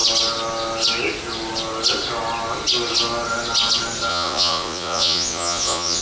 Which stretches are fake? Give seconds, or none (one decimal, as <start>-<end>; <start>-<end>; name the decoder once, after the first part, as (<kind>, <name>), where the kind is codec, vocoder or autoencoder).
4.1-6.0 (vocoder, Vocos)